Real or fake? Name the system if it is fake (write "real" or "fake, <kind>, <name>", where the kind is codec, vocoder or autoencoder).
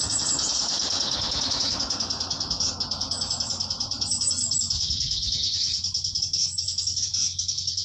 fake, autoencoder, DAC-VAE